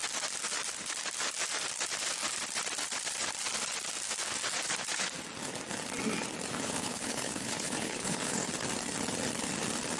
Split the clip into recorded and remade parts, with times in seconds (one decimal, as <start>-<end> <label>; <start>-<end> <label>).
0.0-6.5 recorded; 6.5-8.5 remade; 8.5-10.0 recorded